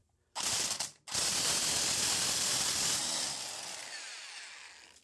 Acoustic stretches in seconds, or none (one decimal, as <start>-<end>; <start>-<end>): 3.0-5.0